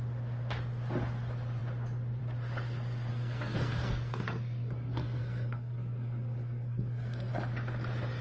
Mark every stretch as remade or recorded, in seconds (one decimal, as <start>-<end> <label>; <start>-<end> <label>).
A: 0.0-3.1 recorded; 3.1-7.3 remade; 7.3-8.2 recorded